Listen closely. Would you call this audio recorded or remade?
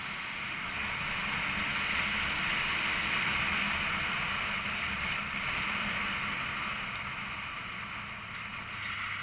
recorded